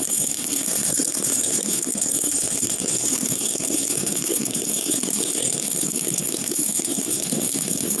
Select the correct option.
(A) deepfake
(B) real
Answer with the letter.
A